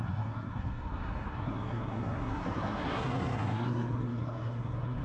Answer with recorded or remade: remade